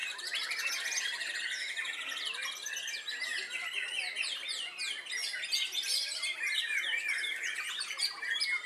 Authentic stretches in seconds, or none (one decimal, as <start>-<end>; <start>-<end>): 0.7-8.7